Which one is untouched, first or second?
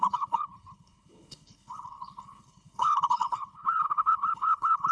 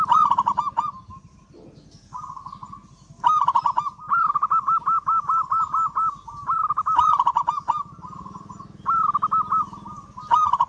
second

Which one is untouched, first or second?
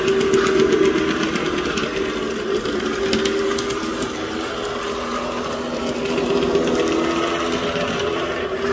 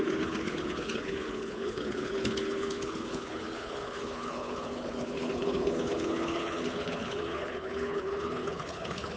first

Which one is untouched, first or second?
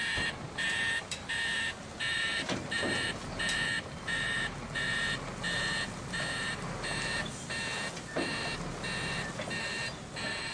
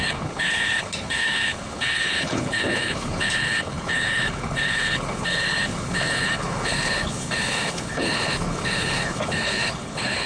first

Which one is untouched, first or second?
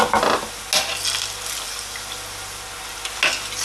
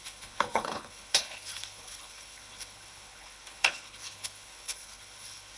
first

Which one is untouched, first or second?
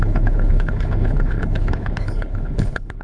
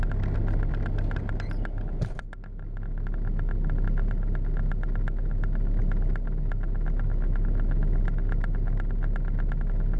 second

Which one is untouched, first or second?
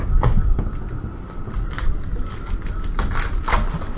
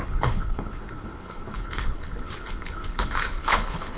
first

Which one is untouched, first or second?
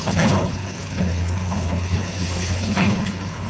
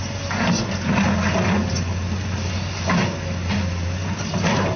second